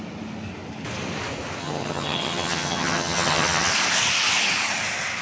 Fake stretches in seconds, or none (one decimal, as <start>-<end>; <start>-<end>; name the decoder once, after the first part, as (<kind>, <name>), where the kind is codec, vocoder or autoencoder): 1.6-3.7 (vocoder, HiFi-GAN)